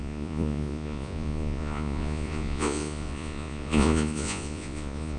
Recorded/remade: remade